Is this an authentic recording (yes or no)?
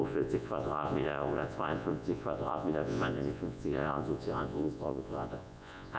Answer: no